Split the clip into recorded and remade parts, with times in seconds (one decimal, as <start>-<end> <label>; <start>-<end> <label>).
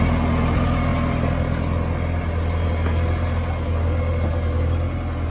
0.0-5.3 recorded